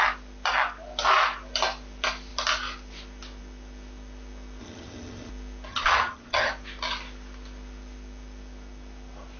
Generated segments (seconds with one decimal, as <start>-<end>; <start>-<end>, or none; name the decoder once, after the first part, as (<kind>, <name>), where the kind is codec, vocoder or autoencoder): 4.6-5.3 (vocoder, HiFi-GAN); 5.7-6.5